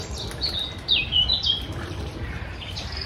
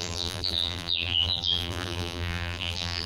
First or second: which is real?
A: first